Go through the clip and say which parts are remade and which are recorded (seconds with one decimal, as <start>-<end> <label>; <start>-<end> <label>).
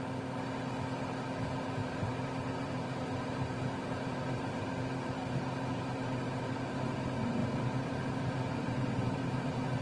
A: 0.0-1.8 recorded; 1.8-6.9 remade; 6.9-7.4 recorded; 7.4-9.8 remade